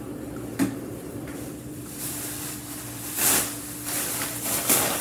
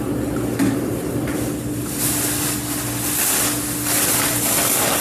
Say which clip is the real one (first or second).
second